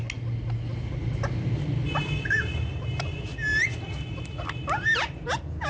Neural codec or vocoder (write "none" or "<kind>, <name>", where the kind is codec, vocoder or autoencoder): none